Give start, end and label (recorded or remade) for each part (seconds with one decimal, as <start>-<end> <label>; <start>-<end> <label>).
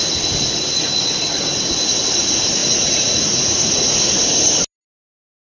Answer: 0.0-2.6 recorded; 2.6-4.1 remade; 4.1-5.5 recorded